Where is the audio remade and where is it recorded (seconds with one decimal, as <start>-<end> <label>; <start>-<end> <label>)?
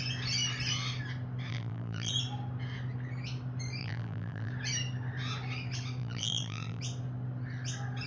0.0-1.5 recorded; 1.5-2.1 remade; 2.1-3.8 recorded; 3.8-4.5 remade; 4.5-6.0 recorded; 6.0-6.8 remade; 6.8-8.1 recorded